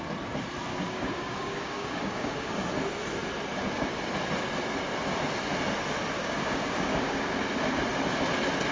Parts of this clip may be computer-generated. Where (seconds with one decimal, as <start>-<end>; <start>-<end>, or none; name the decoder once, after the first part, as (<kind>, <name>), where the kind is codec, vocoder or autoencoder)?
0.7-2.5 (codec, DAC); 6.2-7.4